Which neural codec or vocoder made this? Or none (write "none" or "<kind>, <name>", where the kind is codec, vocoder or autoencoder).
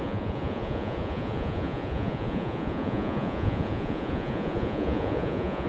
vocoder, Vocos